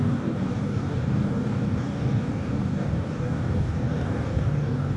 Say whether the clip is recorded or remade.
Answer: remade